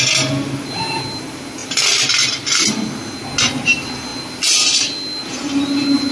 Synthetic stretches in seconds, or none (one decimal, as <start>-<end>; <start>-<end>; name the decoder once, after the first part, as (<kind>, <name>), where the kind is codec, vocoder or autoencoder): none

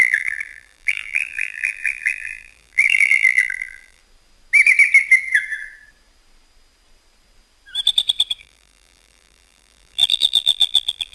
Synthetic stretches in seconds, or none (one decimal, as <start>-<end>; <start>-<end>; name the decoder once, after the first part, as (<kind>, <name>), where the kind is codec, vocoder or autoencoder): 0.0-4.0 (vocoder, BigVGAN v2); 8.4-11.1

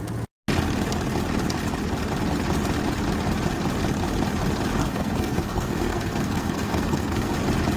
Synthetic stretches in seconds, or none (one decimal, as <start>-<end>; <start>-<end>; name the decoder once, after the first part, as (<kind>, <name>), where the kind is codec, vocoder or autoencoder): 4.8-7.3 (codec, SNAC)